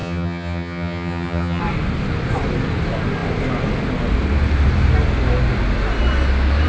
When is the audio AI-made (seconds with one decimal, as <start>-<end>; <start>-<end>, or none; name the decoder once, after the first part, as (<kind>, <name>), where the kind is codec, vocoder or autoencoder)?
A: 0.0-1.6 (vocoder, HiFi-GAN)